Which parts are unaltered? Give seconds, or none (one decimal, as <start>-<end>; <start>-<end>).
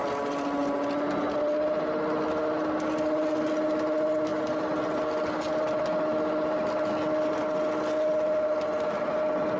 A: 0.0-9.6